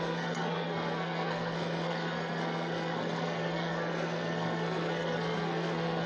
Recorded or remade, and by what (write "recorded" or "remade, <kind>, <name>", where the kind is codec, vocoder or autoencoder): remade, codec, SNAC